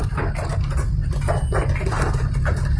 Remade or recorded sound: recorded